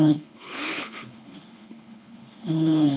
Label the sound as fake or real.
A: fake